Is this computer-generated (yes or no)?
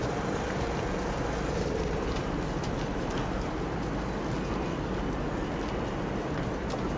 no